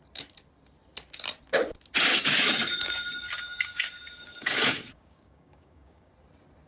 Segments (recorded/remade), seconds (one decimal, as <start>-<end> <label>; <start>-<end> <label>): 0.0-2.1 recorded; 2.1-6.1 remade; 6.1-6.7 recorded